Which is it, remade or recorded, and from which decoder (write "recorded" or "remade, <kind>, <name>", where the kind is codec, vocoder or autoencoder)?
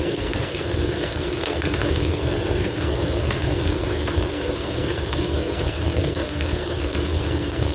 remade, codec, SNAC